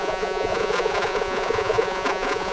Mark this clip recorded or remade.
remade